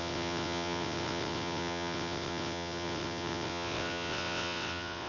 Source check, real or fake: fake